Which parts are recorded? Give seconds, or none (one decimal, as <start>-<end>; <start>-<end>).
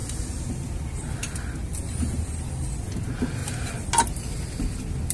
0.0-0.5; 3.4-4.6